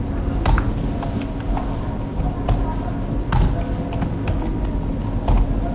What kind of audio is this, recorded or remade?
recorded